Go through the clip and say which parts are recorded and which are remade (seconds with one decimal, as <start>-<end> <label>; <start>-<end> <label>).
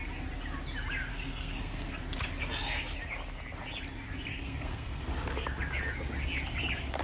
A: 0.0-1.1 recorded; 1.1-2.0 remade; 2.0-4.3 recorded; 4.3-5.0 remade; 5.0-7.0 recorded